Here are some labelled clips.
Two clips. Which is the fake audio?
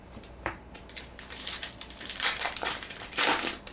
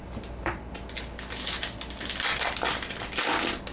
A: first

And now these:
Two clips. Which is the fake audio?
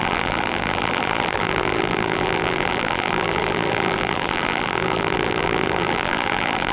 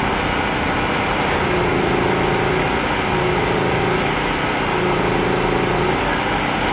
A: first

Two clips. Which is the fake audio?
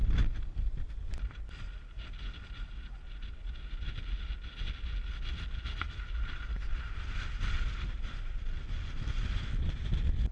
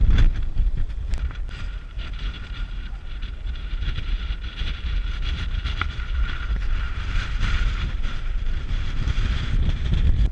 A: second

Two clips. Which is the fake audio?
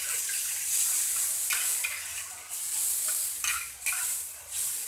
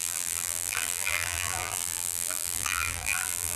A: second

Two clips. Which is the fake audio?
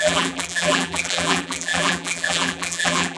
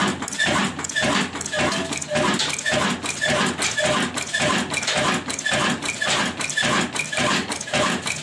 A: first